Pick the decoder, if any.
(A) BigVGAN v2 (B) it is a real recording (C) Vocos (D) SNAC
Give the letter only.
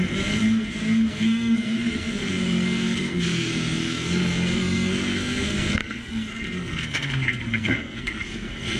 D